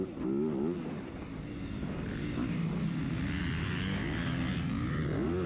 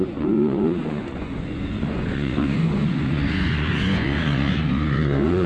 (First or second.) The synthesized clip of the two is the second